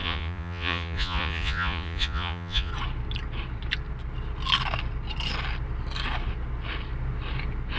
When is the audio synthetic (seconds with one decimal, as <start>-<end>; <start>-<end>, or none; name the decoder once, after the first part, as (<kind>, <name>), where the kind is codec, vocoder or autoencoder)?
0.0-2.7 (vocoder, Vocos)